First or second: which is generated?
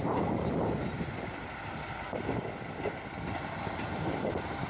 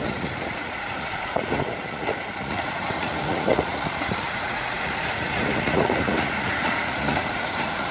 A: second